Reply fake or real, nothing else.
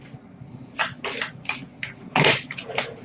real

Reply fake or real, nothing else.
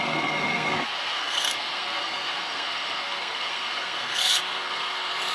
fake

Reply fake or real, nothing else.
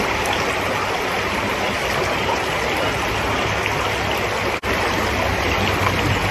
real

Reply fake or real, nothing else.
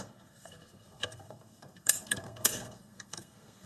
fake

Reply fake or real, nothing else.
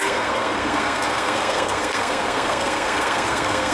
fake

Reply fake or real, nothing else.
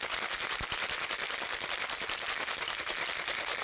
real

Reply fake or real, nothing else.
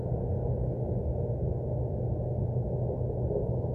real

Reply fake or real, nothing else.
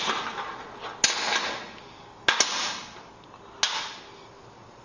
real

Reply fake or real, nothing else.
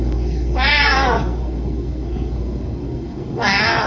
fake